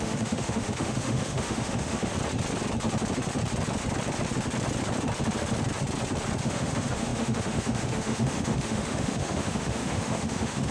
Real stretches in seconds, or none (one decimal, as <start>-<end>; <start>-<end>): 2.1-6.4